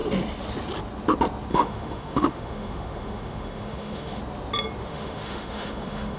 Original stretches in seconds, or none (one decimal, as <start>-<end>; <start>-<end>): 0.0-1.5; 4.2-4.8